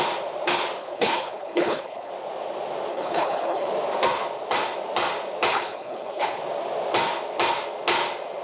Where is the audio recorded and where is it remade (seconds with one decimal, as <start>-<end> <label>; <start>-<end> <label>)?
0.0-0.8 recorded; 0.8-2.1 remade; 2.1-2.9 recorded; 2.9-3.7 remade; 3.7-5.5 recorded; 5.5-6.4 remade; 6.4-8.4 recorded